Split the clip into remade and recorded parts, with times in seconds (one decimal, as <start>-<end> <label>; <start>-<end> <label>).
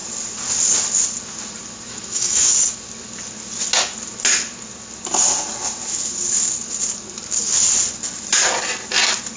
0.0-1.9 recorded; 1.9-2.5 remade; 2.5-9.4 recorded